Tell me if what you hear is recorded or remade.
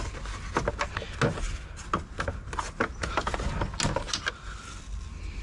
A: recorded